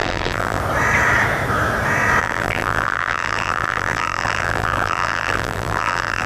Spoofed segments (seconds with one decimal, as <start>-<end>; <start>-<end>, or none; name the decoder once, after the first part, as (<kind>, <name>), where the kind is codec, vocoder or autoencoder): 0.0-0.6 (vocoder, BigVGAN v2); 2.2-6.3